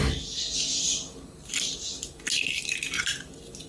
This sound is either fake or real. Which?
real